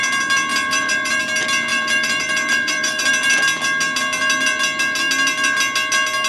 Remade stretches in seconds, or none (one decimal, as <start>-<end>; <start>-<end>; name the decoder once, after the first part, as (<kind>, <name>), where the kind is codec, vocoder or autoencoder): 0.5-1.2 (vocoder, BigVGAN v2); 1.7-3.1